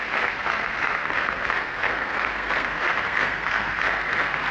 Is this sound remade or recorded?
remade